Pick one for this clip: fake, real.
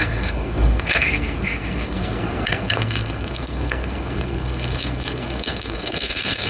fake